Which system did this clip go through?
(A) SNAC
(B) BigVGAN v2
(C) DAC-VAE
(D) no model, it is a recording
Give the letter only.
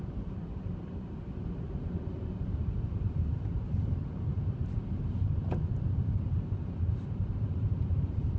B